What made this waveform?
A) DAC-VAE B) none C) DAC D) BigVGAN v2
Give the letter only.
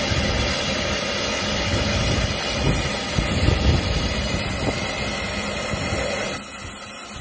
B